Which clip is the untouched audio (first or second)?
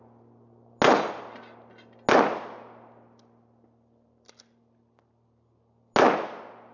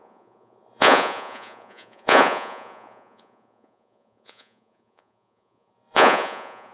first